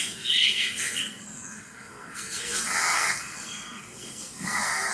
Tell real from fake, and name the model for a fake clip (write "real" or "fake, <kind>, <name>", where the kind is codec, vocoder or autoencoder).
fake, codec, SNAC